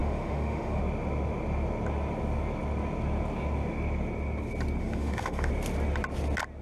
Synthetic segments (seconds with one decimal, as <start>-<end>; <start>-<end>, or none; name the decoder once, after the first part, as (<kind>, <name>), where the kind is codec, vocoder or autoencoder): 0.0-0.8 (autoencoder, DAC-VAE); 4.8-5.5